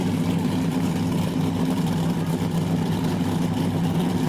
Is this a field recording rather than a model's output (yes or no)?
yes